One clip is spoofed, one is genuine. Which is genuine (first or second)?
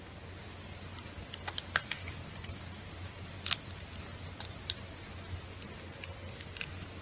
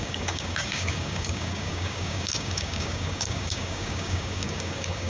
first